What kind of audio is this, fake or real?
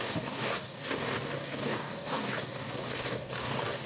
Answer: fake